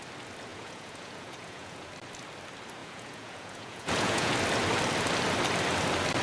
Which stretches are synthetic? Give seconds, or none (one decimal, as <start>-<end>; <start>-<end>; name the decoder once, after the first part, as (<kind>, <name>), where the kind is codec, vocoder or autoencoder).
0.5-1.9 (vocoder, Vocos); 2.8-4.3